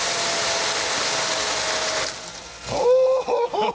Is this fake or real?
real